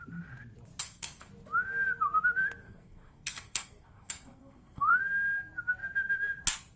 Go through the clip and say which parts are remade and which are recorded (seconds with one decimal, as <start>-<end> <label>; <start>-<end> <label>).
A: 0.0-0.8 recorded; 0.8-1.3 remade; 1.3-2.6 recorded; 2.6-5.0 remade; 5.0-6.8 recorded